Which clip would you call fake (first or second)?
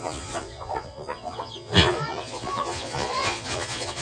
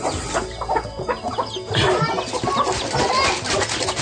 first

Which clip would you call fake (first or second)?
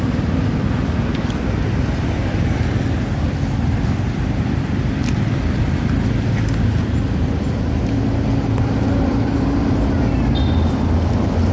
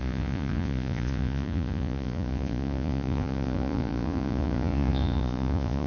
second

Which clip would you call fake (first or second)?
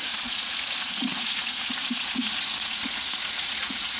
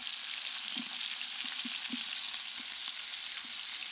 first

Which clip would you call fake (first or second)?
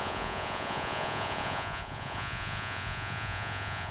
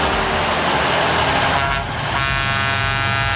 first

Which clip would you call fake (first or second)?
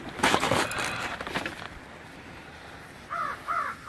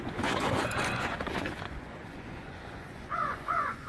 second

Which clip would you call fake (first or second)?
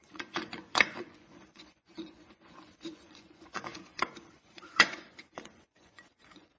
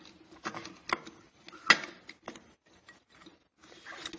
first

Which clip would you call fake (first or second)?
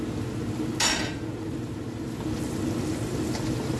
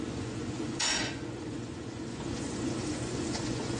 second